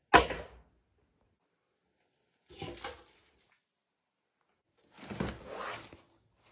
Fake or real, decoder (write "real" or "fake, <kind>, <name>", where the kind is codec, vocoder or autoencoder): real